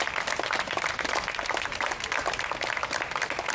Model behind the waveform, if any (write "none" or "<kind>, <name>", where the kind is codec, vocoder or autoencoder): none